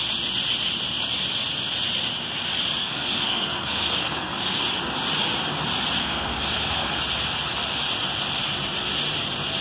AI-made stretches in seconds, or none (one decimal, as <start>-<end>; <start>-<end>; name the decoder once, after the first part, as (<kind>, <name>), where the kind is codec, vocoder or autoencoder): 2.8-4.6 (codec, SNAC); 6.0-7.0